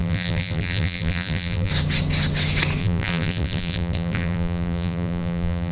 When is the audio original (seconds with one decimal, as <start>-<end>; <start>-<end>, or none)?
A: 1.7-2.8

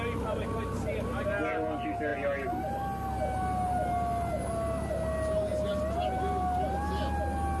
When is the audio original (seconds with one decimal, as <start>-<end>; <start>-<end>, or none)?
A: 0.0-7.6

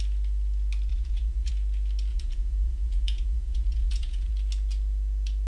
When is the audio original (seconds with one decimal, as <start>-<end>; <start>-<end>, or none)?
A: 0.0-0.9; 1.5-2.1; 4.3-5.5